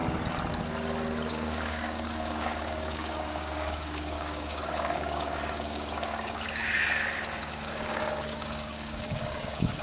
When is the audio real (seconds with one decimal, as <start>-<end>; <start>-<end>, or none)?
0.0-1.3; 6.6-7.4